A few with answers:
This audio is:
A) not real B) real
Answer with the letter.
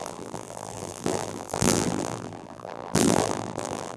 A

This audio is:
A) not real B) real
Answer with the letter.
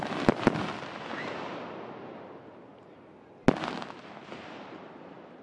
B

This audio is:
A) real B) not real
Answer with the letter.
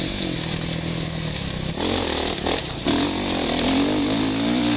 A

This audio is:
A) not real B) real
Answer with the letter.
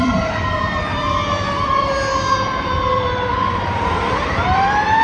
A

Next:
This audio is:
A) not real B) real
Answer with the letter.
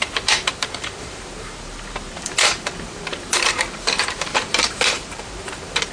A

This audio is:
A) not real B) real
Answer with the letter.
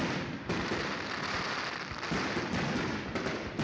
B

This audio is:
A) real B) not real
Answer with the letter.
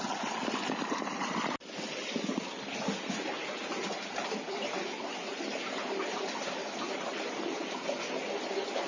A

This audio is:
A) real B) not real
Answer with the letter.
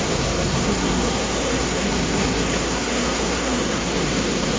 B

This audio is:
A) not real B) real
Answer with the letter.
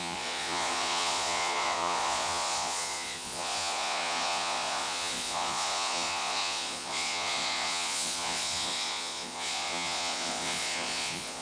A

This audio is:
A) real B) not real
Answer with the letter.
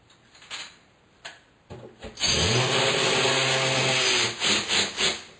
A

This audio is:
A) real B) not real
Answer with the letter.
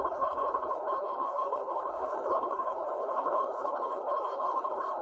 B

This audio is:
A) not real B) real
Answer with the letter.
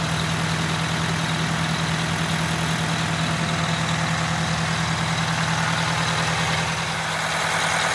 B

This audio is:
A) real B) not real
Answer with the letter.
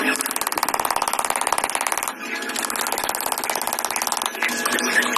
A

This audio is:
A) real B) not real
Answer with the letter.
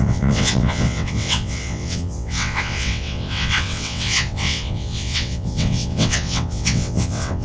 B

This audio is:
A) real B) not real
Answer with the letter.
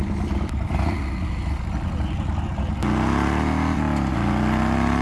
A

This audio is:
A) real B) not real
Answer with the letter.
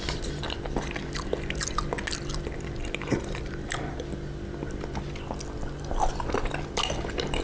A